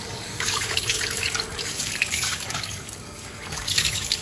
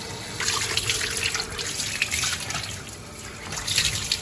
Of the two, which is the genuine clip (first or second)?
second